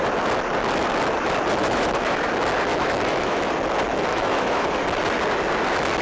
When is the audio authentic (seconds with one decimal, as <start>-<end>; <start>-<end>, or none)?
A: 0.0-1.6; 2.3-2.7; 3.5-4.1; 4.7-6.0